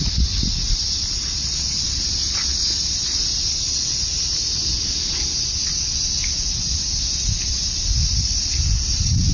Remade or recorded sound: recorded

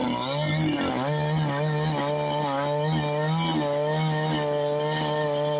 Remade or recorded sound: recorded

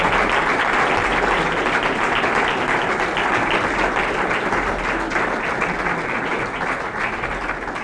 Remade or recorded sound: recorded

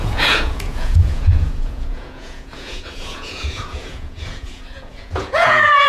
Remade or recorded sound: remade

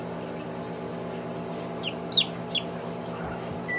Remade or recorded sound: recorded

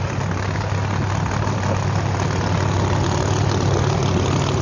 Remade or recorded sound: recorded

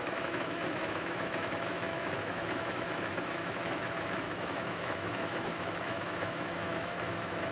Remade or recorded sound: remade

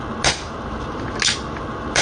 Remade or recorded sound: recorded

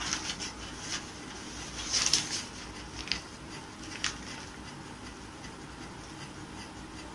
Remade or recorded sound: recorded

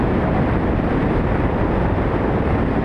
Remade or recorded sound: recorded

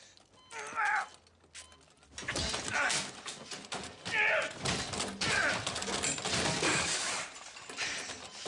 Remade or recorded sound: recorded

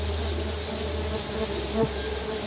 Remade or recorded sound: recorded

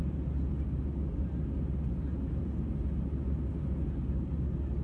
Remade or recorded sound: recorded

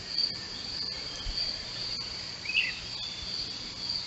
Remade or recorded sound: recorded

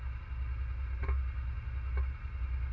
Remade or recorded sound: recorded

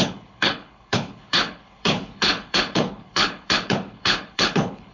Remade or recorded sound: remade